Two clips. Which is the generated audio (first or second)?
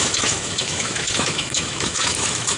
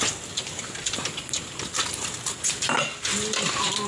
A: first